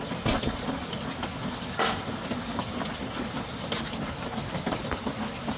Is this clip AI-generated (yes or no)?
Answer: no